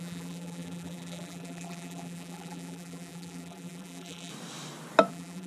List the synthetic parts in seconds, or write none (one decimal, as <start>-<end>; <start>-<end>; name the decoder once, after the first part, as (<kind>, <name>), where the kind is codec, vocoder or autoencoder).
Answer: 0.0-4.3 (vocoder, BigVGAN v2); 5.1-5.5